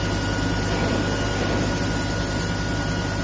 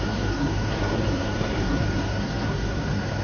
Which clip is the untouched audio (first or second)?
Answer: first